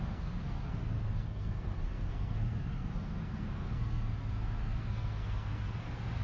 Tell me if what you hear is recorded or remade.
remade